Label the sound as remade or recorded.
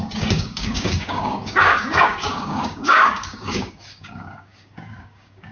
remade